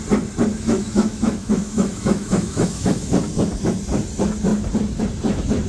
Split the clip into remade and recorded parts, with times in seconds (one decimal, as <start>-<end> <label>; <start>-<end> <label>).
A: 0.0-0.5 recorded; 0.5-3.1 remade; 3.1-5.7 recorded